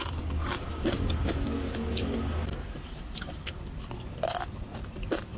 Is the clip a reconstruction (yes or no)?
no